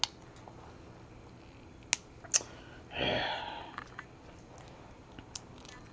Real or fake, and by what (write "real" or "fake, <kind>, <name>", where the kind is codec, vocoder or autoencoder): real